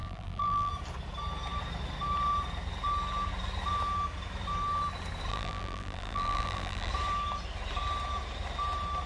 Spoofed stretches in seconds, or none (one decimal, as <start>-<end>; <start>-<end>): 0.0-0.7; 5.3-6.9